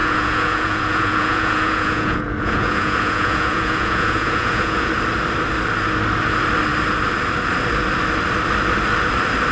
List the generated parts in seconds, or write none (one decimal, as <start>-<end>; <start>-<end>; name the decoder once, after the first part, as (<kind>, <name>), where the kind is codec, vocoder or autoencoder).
0.0-4.9 (vocoder, Vocos)